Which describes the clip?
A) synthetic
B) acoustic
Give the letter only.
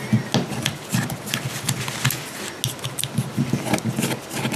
B